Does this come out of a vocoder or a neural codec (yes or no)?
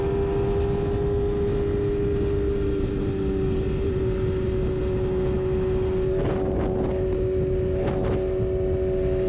no